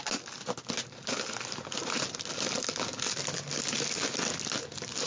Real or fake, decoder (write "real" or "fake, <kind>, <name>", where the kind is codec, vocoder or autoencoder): real